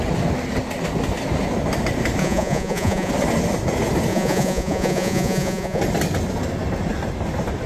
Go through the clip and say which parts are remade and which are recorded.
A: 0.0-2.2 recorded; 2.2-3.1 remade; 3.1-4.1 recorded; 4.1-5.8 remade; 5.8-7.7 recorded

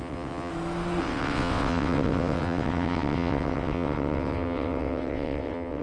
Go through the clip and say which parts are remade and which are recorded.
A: 0.0-0.5 remade; 0.5-1.0 recorded; 1.0-5.8 remade

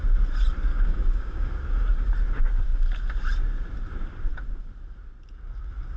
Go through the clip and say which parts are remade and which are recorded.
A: 0.0-0.7 recorded; 0.7-1.5 remade; 1.5-6.0 recorded